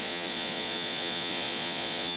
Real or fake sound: fake